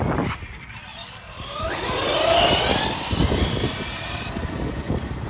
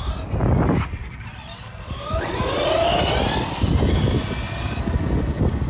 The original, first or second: second